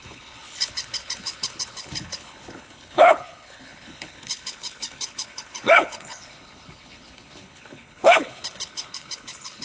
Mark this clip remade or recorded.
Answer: remade